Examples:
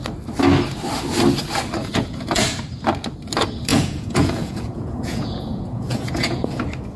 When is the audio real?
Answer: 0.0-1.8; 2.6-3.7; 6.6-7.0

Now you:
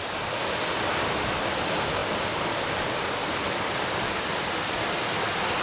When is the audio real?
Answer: 0.0-5.6

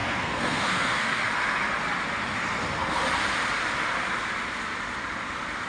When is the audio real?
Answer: 1.2-5.7

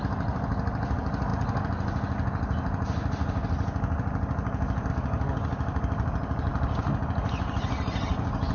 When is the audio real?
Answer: 0.0-8.5

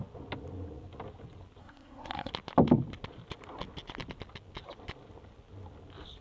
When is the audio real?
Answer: 0.0-1.6; 2.3-6.2

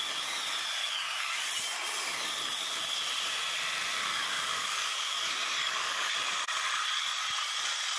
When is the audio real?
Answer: 0.0-0.8; 1.3-4.1; 6.1-8.0